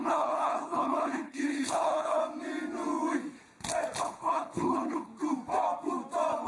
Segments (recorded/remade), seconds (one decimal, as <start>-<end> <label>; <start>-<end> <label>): 0.0-2.2 remade; 2.2-4.0 recorded; 4.0-5.1 remade; 5.1-6.5 recorded